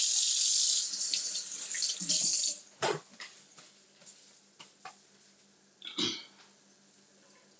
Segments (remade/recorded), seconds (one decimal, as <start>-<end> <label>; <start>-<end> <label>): 0.0-7.6 recorded